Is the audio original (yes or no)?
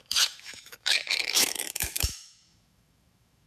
no